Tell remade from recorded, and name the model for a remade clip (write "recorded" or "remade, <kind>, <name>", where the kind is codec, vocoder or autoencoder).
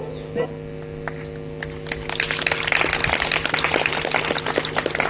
recorded